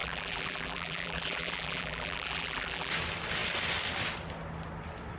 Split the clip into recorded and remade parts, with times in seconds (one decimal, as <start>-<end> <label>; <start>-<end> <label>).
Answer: 0.0-2.9 remade; 2.9-5.2 recorded